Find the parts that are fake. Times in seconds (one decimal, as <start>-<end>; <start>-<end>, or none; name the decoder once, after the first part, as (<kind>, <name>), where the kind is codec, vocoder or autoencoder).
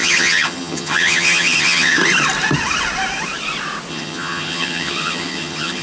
0.0-2.0 (vocoder, HiFi-GAN); 3.9-5.8